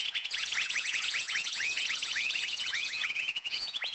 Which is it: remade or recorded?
remade